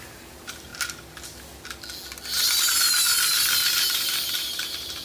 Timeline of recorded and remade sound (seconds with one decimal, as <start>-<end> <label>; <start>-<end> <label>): 0.0-0.7 remade; 0.7-3.7 recorded; 3.7-5.0 remade